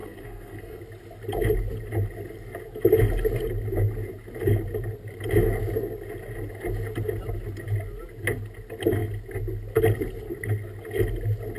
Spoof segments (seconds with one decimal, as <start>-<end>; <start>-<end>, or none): 0.0-0.8